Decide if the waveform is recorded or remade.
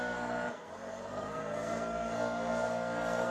remade